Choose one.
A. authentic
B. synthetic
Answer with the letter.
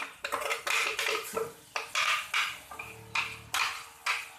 A